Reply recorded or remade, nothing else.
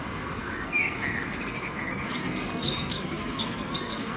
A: remade